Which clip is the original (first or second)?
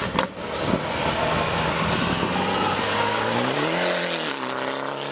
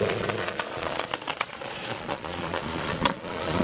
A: first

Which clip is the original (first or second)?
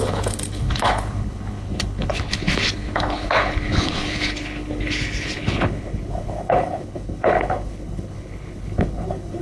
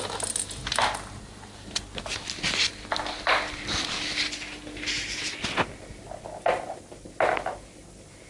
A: second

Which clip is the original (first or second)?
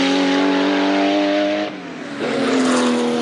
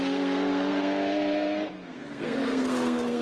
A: first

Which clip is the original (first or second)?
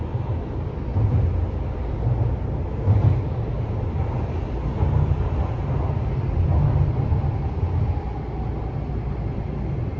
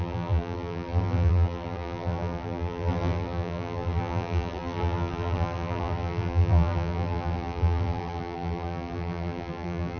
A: first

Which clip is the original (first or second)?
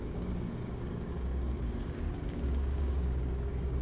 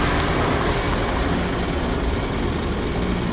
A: second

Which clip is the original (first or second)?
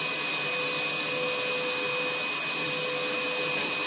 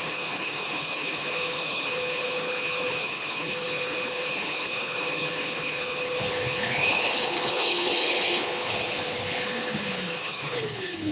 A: first